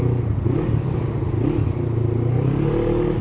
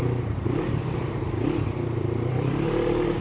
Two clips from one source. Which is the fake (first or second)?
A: second